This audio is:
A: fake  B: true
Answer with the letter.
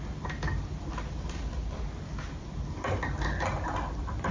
B